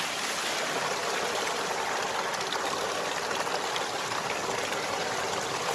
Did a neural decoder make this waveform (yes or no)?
no